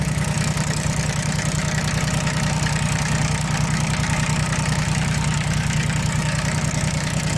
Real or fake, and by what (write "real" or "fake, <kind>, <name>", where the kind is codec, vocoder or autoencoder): fake, codec, DAC